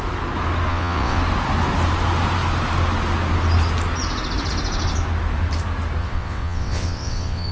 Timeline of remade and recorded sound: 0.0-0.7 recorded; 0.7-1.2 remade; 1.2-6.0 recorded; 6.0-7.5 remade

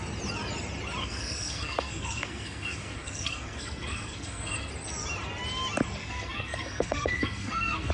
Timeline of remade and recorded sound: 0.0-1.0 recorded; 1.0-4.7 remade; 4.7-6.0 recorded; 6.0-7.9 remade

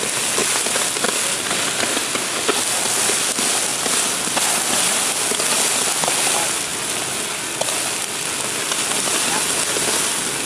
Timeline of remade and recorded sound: 0.0-10.5 recorded